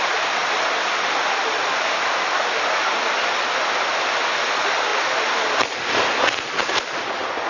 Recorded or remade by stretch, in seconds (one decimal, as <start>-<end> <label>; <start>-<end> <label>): 0.0-7.5 recorded